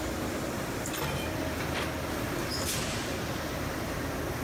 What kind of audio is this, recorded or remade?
recorded